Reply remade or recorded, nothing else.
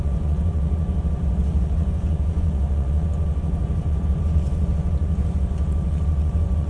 remade